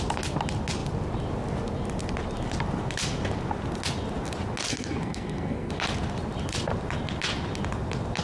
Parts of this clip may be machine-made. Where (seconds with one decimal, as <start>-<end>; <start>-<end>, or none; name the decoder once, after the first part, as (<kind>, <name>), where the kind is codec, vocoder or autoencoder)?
4.7-5.7 (codec, SNAC)